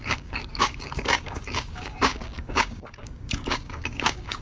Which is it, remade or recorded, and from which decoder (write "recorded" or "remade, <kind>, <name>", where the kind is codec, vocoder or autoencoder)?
remade, codec, DAC